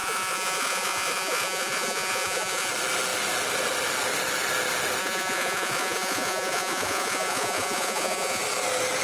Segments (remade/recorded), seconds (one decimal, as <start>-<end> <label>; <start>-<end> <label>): 0.0-2.7 remade; 2.7-5.0 recorded; 5.0-8.4 remade; 8.4-9.0 recorded